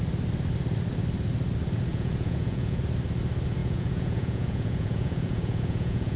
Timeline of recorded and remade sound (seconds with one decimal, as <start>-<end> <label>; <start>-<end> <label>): 0.0-1.9 recorded; 1.9-2.8 remade; 2.8-3.6 recorded; 3.6-6.2 remade